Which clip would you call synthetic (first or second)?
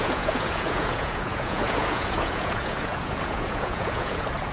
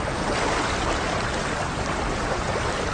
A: first